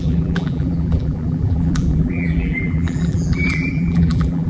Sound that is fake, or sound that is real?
fake